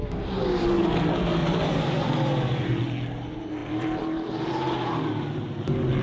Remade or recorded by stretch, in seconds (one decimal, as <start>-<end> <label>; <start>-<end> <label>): 0.0-1.4 recorded; 1.4-2.8 remade; 2.8-3.6 recorded; 3.6-4.5 remade; 4.5-6.0 recorded